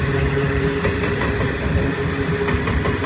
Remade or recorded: recorded